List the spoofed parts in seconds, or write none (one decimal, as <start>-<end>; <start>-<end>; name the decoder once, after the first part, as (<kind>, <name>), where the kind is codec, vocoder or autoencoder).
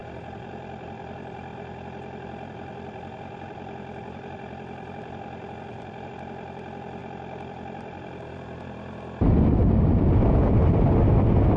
0.0-0.5 (vocoder, BigVGAN v2); 1.5-6.1; 7.0-10.5